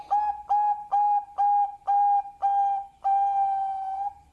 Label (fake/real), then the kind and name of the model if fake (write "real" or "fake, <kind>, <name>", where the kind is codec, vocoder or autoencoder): real